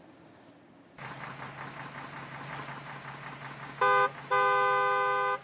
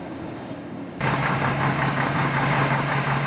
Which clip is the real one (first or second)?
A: first